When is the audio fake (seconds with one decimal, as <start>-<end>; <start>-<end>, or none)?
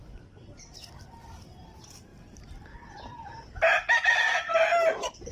none